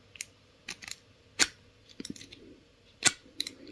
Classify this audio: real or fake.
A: real